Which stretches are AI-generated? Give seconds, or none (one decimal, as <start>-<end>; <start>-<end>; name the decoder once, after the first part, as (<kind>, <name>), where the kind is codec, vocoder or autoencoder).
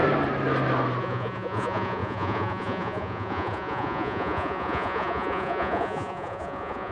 1.0-6.9 (vocoder, Vocos)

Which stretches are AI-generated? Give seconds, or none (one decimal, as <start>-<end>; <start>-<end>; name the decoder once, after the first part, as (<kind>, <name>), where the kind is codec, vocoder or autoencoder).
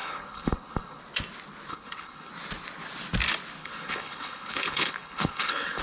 0.0-1.0 (codec, HILCodec); 1.7-2.3; 3.6-5.8